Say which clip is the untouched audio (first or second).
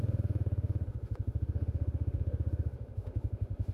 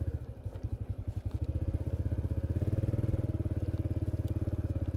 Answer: second